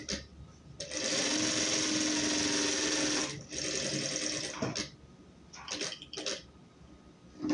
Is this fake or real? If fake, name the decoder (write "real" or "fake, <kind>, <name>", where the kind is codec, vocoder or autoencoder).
real